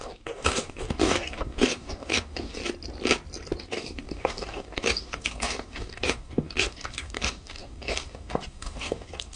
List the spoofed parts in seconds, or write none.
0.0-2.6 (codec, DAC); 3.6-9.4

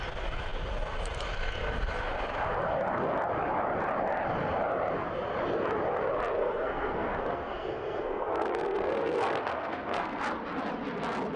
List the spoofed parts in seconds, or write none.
6.4-10.2 (codec, SNAC)

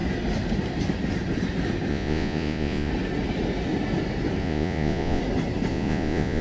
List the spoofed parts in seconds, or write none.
1.9-2.9 (vocoder, Vocos); 4.4-5.2; 5.7-6.4

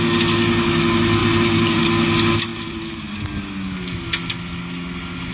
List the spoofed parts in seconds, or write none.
1.2-1.8 (vocoder, BigVGAN v2); 2.5-3.1

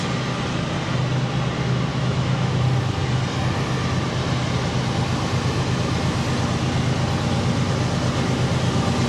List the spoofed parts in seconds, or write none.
1.9-2.6 (autoencoder, DAC-VAE)